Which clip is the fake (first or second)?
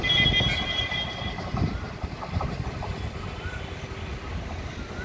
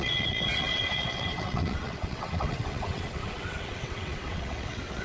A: second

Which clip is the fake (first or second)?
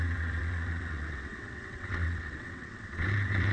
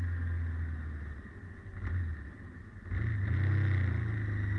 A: first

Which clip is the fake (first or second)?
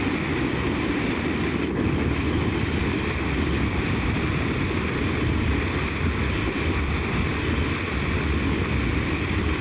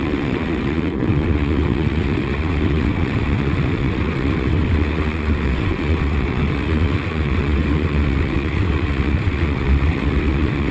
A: second